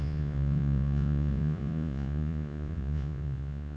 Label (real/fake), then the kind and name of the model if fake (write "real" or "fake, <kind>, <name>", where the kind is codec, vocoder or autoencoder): fake, vocoder, Vocos